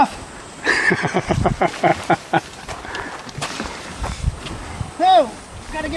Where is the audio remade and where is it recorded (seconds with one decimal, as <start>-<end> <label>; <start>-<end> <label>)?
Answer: 0.0-1.9 recorded; 1.9-5.5 remade; 5.5-6.0 recorded